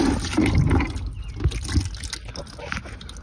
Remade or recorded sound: recorded